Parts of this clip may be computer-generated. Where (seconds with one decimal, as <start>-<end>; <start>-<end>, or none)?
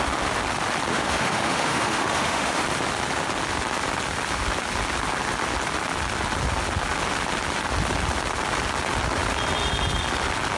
0.9-2.6